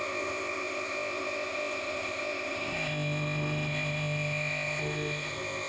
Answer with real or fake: fake